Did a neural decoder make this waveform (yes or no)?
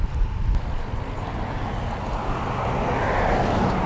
no